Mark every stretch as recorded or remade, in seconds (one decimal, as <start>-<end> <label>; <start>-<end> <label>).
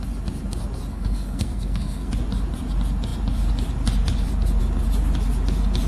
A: 0.0-0.9 recorded; 0.9-2.1 remade; 2.1-5.9 recorded